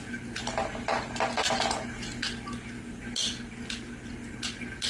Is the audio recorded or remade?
recorded